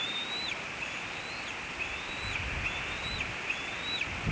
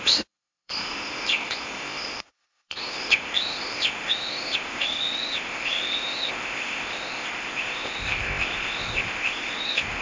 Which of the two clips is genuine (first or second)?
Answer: first